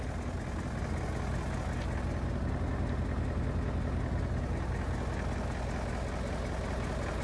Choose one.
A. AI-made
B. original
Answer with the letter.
B